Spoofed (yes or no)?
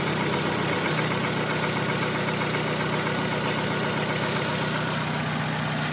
no